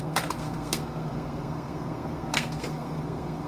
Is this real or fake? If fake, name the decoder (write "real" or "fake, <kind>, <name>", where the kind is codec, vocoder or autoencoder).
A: fake, codec, SNAC